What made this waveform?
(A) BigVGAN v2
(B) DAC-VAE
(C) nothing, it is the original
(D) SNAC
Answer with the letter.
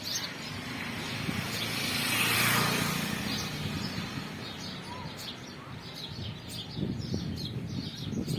C